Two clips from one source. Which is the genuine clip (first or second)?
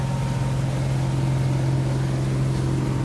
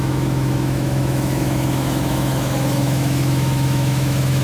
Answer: first